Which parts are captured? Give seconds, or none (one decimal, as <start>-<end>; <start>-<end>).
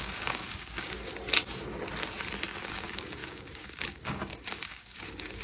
1.1-2.7